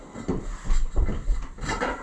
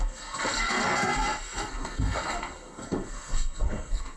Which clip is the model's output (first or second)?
second